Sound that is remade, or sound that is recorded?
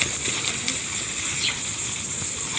recorded